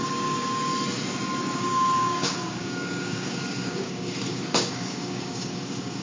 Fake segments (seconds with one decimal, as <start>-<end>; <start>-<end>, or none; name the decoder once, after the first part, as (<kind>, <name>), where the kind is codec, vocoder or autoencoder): 0.0-0.7 (codec, DAC); 1.4-6.0